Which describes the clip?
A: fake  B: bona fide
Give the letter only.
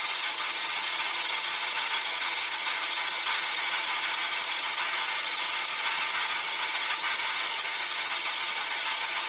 A